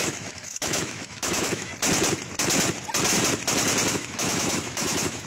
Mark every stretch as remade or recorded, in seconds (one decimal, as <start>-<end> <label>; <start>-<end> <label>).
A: 0.0-1.7 remade; 1.7-3.9 recorded; 3.9-5.3 remade

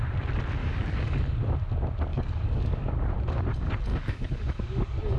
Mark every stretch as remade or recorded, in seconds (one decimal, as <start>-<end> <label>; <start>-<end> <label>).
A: 0.0-0.6 recorded; 0.6-1.2 remade; 1.2-2.1 recorded; 2.1-2.9 remade; 2.9-3.9 recorded; 3.9-5.2 remade

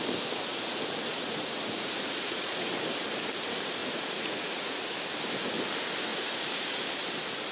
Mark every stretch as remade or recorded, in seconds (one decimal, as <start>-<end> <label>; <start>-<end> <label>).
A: 0.0-0.5 recorded; 0.5-2.7 remade; 2.7-3.8 recorded; 3.8-4.8 remade; 4.8-6.1 recorded; 6.1-6.8 remade; 6.8-7.5 recorded

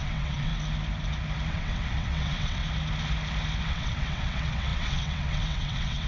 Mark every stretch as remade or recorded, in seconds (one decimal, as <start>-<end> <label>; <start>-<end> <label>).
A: 0.0-0.5 remade; 0.5-1.5 recorded; 1.5-2.6 remade; 2.6-3.6 recorded; 3.6-6.1 remade

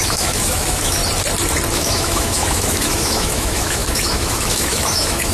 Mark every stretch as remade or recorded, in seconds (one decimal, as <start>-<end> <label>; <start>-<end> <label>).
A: 0.0-1.0 remade; 1.0-1.7 recorded; 1.7-5.3 remade

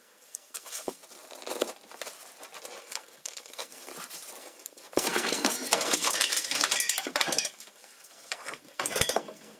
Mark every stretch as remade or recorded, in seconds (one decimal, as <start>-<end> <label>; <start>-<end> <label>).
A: 0.0-1.0 remade; 1.0-2.8 recorded; 2.8-3.9 remade; 3.9-4.4 recorded; 4.4-9.6 remade